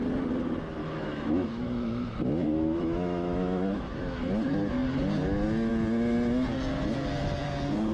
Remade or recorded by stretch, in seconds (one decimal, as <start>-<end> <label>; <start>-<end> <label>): 0.0-0.8 recorded; 0.8-4.3 remade; 4.3-7.9 recorded

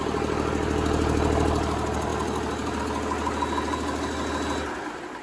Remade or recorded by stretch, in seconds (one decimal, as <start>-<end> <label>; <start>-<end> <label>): 0.0-5.2 recorded

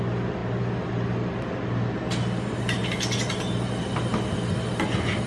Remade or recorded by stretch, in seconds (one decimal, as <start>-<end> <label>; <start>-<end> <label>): 0.0-5.3 recorded

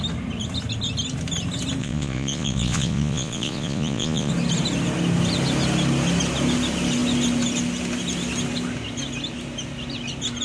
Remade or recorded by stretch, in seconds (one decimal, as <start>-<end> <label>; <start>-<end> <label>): 0.0-1.8 recorded; 1.8-4.3 remade; 4.3-10.4 recorded

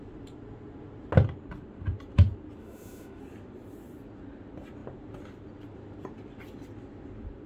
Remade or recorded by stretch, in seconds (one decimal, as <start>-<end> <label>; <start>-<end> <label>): 0.0-2.6 recorded; 2.6-3.2 remade; 3.2-7.5 recorded

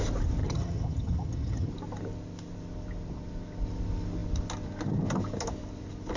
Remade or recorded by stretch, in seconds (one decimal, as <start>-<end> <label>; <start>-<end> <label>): 0.0-0.4 recorded; 0.4-1.7 remade; 1.7-6.2 recorded